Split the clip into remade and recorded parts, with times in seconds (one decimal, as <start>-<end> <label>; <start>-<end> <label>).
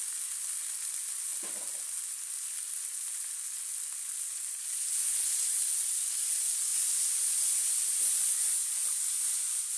0.0-8.6 recorded; 8.6-9.2 remade; 9.2-9.8 recorded